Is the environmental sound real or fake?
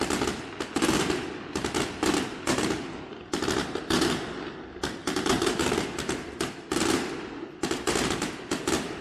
real